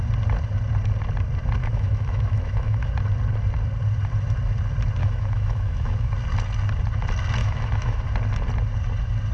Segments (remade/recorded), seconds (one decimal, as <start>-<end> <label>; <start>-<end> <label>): 0.0-1.6 recorded; 1.6-2.9 remade; 2.9-5.0 recorded; 5.0-6.1 remade; 6.1-7.4 recorded; 7.4-8.0 remade; 8.0-9.3 recorded